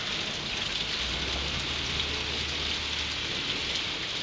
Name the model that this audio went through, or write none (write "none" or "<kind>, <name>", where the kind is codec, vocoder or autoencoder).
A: none